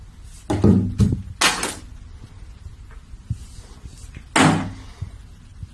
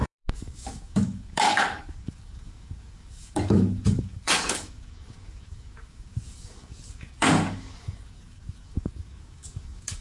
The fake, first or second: second